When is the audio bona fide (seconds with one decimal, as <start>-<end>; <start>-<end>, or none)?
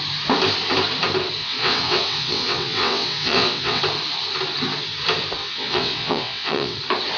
0.0-1.4; 3.8-5.4; 6.8-7.2